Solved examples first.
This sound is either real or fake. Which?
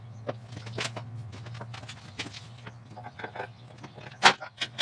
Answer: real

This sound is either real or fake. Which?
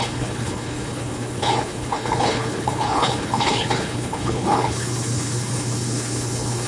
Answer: fake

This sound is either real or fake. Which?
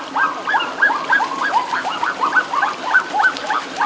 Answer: real